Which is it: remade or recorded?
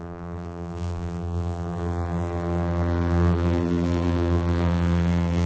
remade